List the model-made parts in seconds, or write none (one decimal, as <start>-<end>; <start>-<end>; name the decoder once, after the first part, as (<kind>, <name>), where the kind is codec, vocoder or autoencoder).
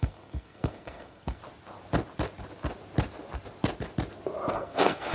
0.0-1.4 (codec, SNAC); 4.5-5.1